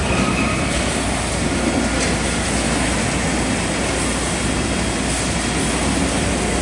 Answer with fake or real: real